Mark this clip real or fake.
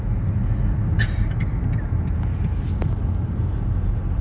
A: real